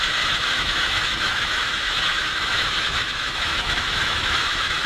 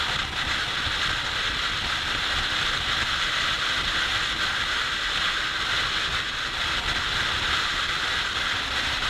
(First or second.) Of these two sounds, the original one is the second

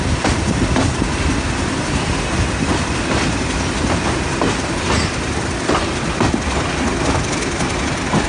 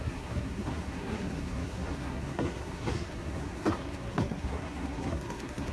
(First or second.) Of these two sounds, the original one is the first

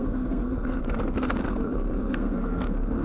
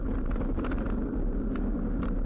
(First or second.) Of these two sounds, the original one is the second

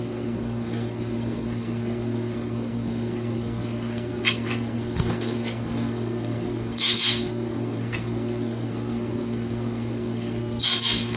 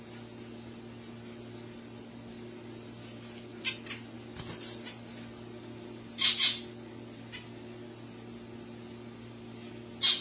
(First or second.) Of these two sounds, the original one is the second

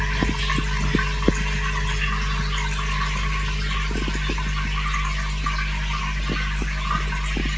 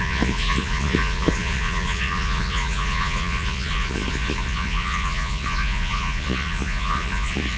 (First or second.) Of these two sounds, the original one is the first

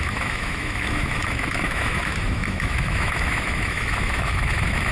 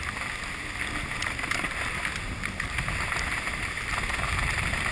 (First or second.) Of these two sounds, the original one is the second